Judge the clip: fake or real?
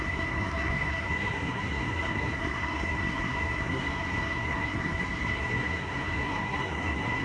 fake